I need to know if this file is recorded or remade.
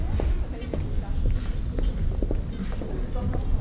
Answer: recorded